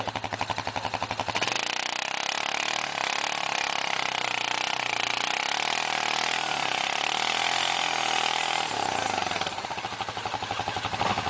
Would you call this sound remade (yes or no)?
no